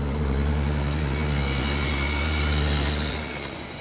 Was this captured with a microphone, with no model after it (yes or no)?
no